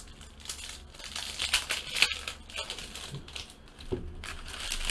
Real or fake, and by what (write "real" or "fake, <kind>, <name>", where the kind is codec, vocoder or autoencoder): real